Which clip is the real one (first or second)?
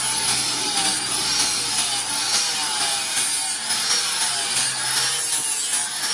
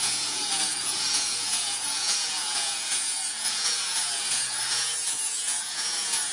first